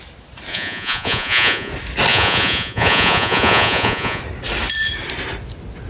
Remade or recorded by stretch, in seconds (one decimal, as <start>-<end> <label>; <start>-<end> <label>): 0.0-0.5 recorded; 0.5-1.7 remade; 1.7-2.1 recorded; 2.1-4.2 remade; 4.2-5.9 recorded